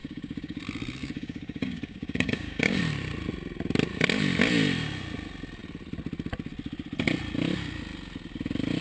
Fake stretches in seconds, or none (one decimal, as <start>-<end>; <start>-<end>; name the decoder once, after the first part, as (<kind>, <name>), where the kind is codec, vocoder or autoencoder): 0.0-0.6 (codec, DAC); 1.0-2.8